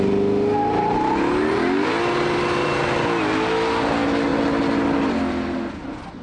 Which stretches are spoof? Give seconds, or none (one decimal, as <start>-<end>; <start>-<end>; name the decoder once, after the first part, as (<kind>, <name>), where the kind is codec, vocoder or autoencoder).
none